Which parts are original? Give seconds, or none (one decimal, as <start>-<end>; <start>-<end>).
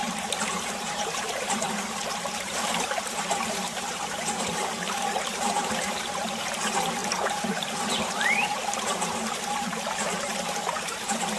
none